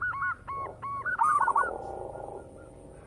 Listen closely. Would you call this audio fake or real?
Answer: real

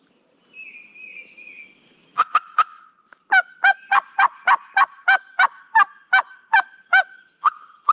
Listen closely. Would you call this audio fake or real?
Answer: real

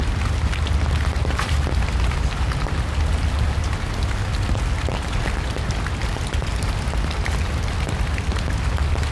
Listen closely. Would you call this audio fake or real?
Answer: real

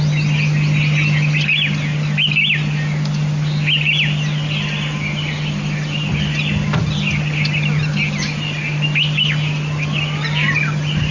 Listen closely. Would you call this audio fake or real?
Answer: real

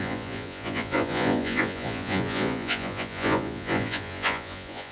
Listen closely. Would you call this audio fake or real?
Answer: fake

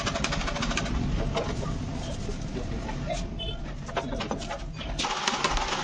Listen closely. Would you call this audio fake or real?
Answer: real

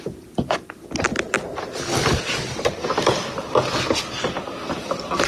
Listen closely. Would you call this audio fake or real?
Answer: real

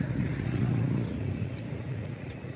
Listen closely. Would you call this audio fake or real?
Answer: fake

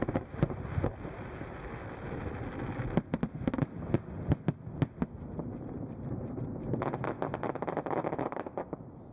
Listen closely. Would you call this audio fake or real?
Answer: real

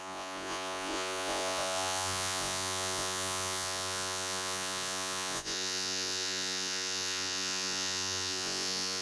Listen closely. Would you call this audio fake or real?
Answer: fake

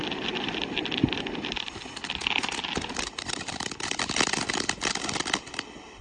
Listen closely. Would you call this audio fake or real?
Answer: real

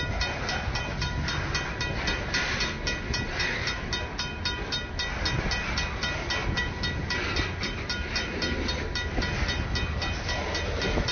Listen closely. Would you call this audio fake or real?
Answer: real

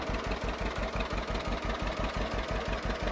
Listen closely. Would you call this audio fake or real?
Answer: real